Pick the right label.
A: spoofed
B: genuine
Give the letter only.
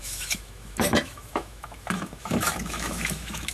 A